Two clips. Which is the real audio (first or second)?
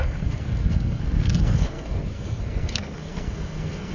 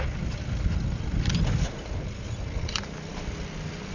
second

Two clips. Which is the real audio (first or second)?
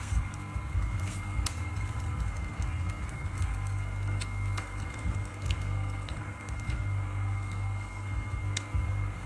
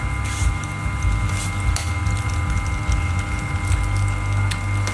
second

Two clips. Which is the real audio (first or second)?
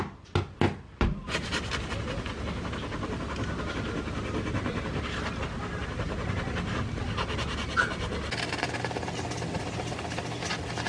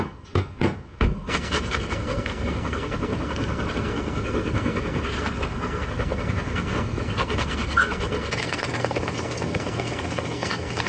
first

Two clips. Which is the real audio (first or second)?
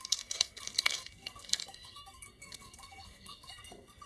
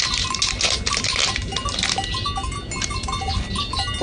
second